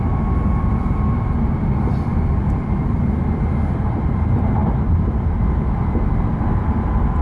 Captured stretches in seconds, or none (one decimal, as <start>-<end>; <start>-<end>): 0.0-7.2